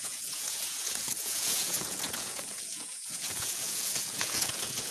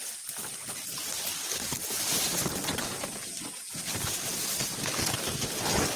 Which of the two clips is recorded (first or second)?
second